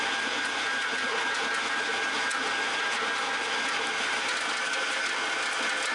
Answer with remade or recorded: recorded